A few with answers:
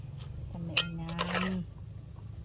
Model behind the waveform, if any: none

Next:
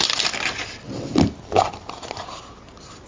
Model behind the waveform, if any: none